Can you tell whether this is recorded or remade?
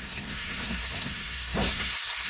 remade